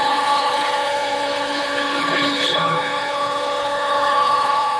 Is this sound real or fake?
fake